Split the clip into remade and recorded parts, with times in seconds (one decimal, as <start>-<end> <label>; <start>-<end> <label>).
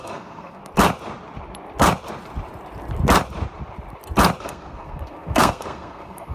0.0-0.6 remade; 0.6-4.4 recorded; 4.4-6.3 remade